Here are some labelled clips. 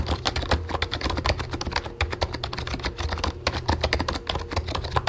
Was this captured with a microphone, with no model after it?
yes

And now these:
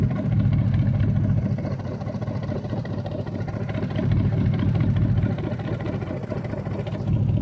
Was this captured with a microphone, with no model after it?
no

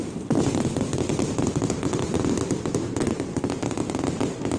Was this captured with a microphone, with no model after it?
yes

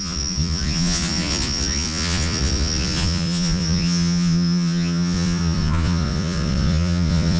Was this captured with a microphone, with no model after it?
no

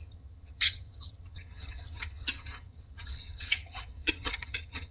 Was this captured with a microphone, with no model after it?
no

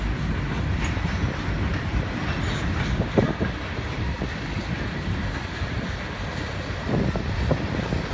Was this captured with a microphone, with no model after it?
yes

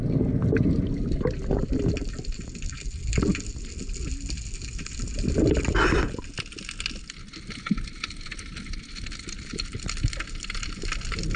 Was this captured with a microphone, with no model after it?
yes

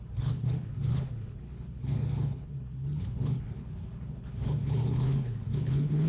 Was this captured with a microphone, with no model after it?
no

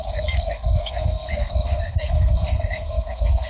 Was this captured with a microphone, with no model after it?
no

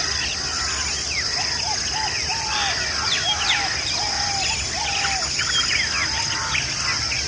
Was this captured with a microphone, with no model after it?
yes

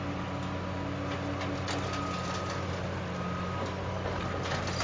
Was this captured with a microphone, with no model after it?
yes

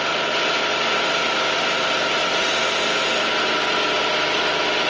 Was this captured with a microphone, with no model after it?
yes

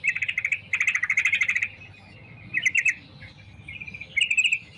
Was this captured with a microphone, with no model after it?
yes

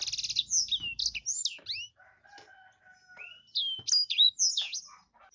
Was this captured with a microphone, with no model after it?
yes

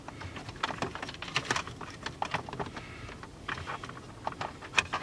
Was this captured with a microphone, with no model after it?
yes